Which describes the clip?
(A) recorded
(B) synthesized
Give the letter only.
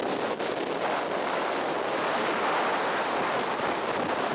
A